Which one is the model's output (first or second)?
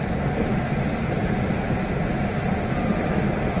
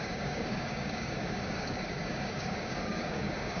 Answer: second